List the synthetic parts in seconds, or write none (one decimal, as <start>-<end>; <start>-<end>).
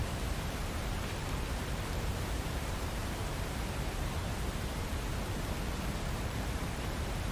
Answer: 0.0-4.2; 5.8-7.3